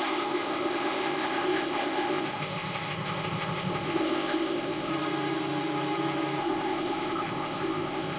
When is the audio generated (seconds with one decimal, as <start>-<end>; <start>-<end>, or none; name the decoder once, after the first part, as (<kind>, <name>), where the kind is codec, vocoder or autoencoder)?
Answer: 0.0-4.9 (codec, ZipCodec); 6.4-8.2